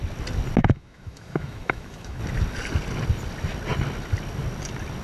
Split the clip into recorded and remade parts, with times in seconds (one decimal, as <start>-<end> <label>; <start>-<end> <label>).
0.0-0.6 recorded; 0.6-2.2 remade; 2.2-5.0 recorded